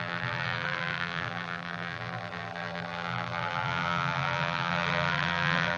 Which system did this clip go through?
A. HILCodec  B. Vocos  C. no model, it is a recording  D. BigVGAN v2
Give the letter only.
D